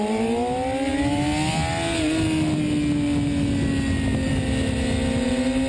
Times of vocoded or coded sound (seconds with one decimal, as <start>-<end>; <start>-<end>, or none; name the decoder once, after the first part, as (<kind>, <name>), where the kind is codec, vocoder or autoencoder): none